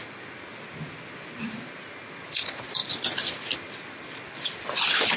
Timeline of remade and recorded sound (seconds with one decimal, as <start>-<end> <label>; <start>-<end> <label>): 0.0-5.2 recorded